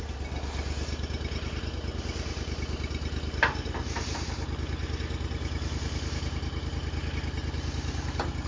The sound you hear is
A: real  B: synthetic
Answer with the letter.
A